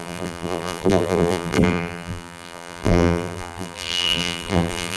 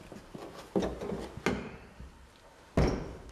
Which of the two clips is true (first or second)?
second